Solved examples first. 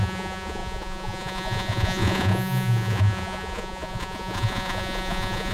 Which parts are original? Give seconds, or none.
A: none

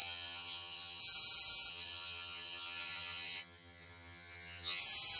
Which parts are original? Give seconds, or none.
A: 1.0-1.7; 4.8-5.2

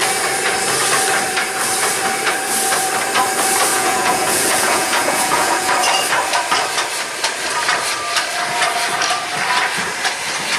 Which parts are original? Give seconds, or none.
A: 0.0-3.7; 5.7-10.6

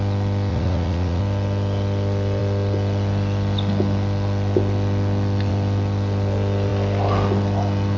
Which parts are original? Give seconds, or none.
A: 0.0-0.5; 1.2-8.0

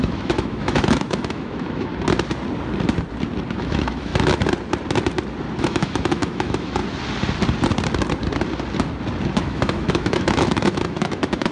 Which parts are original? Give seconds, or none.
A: 1.9-3.5; 4.1-5.6; 6.8-9.4

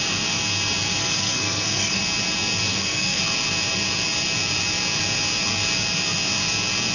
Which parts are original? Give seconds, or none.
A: 0.0-1.0; 2.0-2.7; 3.2-6.9

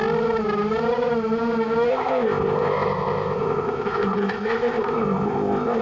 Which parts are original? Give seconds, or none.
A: 0.0-1.9

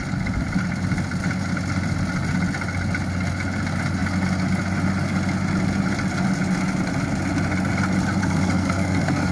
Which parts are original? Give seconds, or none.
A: 0.0-8.2